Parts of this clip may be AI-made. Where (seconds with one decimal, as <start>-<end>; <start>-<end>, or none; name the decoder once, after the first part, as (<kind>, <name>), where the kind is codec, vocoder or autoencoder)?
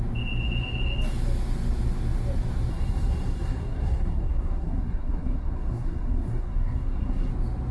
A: 2.7-7.3 (codec, SNAC)